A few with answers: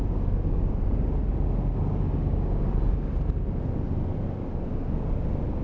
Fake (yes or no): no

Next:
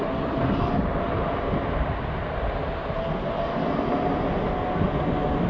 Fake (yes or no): no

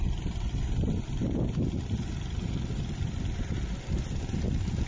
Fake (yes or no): no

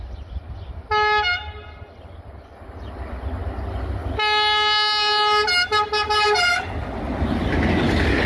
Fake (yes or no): no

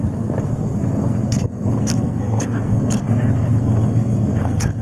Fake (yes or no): yes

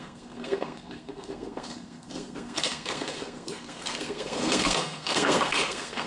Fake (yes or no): yes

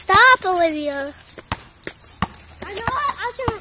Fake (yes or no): no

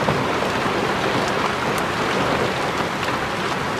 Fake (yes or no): no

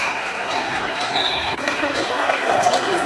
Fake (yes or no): yes